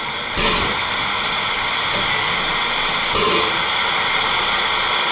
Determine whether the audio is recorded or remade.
recorded